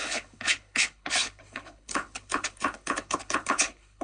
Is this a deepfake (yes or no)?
yes